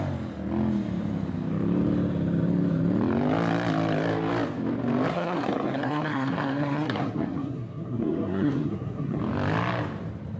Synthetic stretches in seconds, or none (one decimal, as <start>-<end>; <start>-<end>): 5.1-9.2